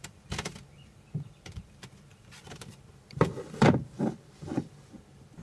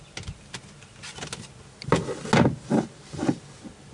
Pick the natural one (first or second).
second